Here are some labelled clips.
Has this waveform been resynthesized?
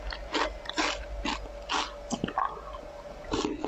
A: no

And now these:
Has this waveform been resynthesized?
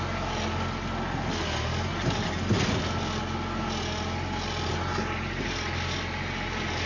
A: no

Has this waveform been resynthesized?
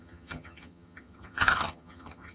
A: yes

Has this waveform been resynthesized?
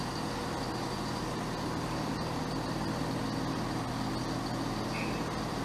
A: no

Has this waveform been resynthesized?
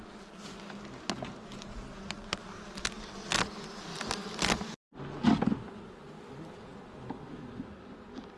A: no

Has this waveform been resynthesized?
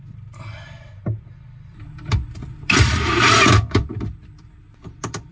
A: yes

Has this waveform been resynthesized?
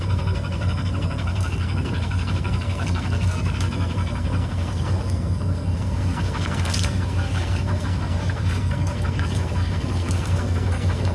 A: yes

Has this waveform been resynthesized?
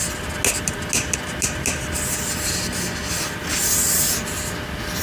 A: no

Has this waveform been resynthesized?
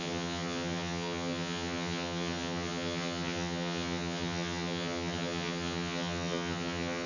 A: yes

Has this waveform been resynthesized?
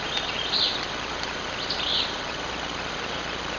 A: no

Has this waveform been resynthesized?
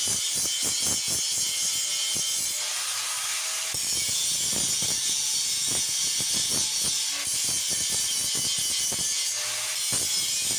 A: no